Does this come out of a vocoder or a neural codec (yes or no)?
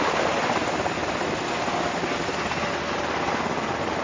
no